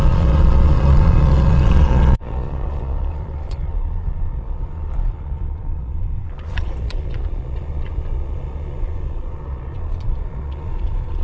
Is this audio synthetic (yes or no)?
yes